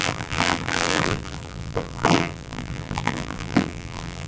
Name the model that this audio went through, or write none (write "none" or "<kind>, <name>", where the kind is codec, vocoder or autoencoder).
vocoder, BigVGAN v2